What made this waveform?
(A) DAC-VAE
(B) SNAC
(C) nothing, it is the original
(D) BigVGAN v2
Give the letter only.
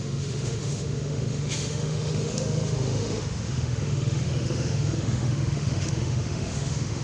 A